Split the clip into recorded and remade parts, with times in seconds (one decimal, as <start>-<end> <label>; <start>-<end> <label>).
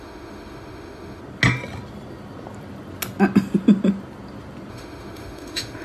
0.0-1.2 remade; 1.2-4.7 recorded; 4.7-5.8 remade